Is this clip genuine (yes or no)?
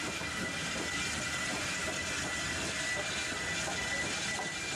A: yes